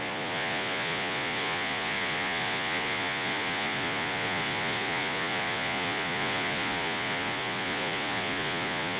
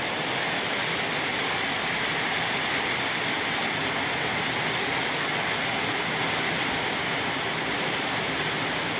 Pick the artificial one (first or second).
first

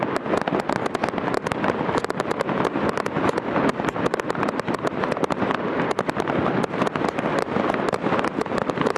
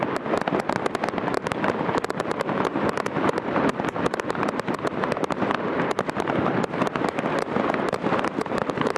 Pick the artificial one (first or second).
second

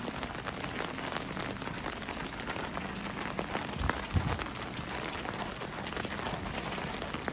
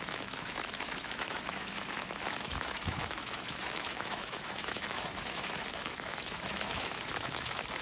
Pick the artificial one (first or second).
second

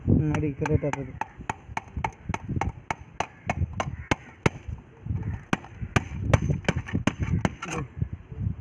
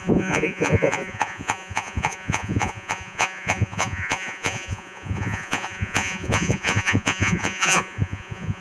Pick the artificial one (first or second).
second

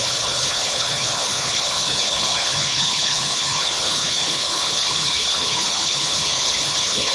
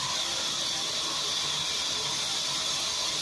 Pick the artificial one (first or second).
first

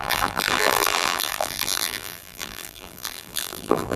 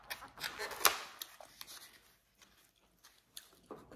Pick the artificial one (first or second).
first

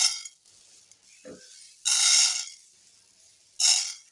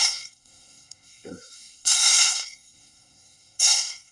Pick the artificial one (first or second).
second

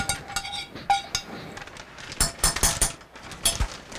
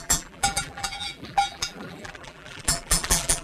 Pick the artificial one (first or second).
second